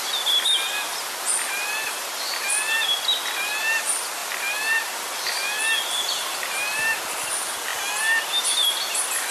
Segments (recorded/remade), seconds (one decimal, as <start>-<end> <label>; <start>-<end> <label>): 0.0-9.3 recorded